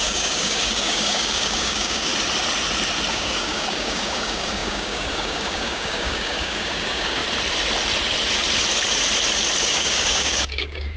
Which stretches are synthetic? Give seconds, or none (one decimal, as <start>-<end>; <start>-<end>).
0.0-2.1; 3.1-7.2; 9.6-11.0